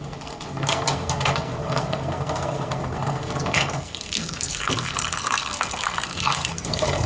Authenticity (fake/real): fake